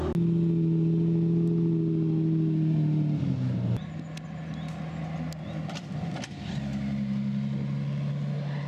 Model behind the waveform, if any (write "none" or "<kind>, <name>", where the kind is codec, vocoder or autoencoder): none